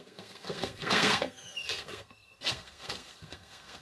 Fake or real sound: fake